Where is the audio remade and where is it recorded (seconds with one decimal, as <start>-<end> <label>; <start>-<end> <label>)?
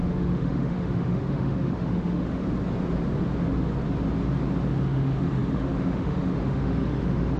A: 0.0-2.4 remade; 2.4-4.8 recorded; 4.8-7.4 remade